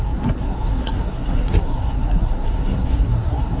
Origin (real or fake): fake